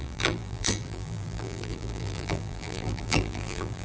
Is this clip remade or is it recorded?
remade